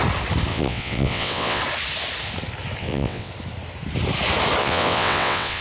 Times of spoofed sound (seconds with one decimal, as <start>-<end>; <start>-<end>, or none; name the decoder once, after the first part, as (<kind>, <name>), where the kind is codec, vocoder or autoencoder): 0.5-1.6 (vocoder, WaveNeXt); 2.8-3.3; 4.6-5.6